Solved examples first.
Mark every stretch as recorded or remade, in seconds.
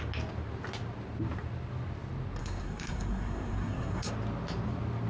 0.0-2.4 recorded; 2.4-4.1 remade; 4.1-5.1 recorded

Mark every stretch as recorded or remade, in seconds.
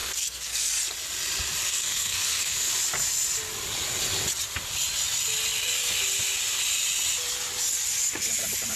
0.0-0.7 remade; 0.7-1.7 recorded; 1.7-2.7 remade; 2.7-8.8 recorded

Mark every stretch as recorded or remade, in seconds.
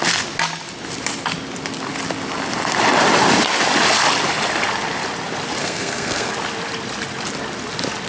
0.0-5.6 recorded; 5.6-6.3 remade; 6.3-8.1 recorded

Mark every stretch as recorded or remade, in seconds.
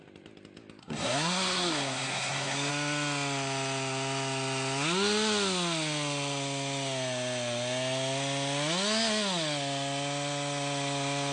0.0-0.8 recorded; 0.8-2.7 remade; 2.7-11.3 recorded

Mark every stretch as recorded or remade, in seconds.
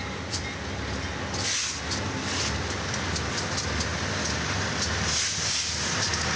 0.0-6.4 recorded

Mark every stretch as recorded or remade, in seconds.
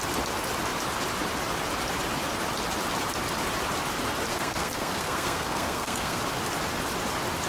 0.0-4.3 recorded; 4.3-6.2 remade; 6.2-7.5 recorded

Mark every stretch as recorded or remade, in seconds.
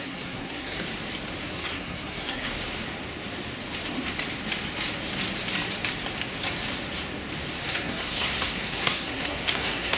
0.0-0.9 remade; 0.9-1.5 recorded; 1.5-2.5 remade; 2.5-7.7 recorded; 7.7-10.0 remade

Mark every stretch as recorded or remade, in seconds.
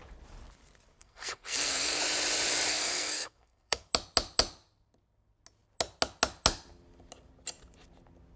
0.0-1.0 recorded; 1.0-2.0 remade; 2.0-2.7 recorded; 2.7-3.9 remade; 3.9-8.4 recorded